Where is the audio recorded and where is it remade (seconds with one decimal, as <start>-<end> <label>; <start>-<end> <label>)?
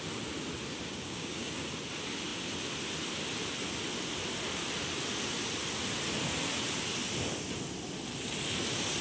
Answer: 0.0-0.9 recorded; 0.9-1.5 remade; 1.5-9.0 recorded